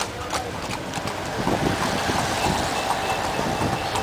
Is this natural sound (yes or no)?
yes